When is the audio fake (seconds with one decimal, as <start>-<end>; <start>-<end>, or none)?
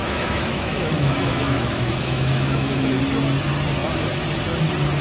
0.0-3.0